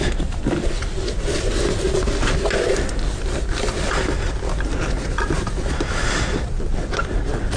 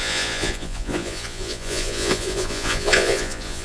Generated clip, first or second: second